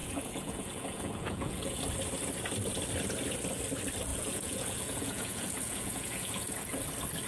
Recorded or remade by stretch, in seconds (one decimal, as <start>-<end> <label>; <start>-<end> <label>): 0.0-1.8 remade; 1.8-4.1 recorded; 4.1-6.8 remade; 6.8-7.3 recorded